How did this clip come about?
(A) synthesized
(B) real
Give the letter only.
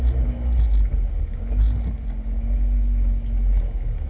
B